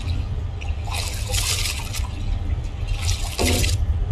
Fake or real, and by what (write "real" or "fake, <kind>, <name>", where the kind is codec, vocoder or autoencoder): real